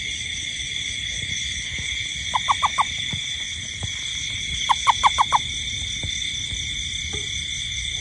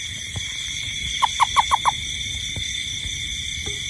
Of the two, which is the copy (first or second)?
second